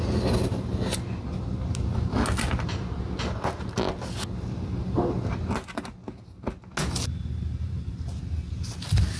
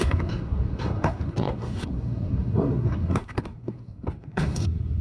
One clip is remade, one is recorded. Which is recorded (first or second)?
first